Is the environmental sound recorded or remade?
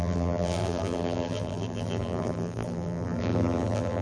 remade